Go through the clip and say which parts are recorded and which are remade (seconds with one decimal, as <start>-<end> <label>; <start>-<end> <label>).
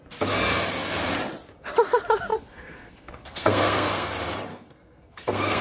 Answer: 0.0-2.3 recorded; 2.3-4.1 remade; 4.1-4.5 recorded; 4.5-5.6 remade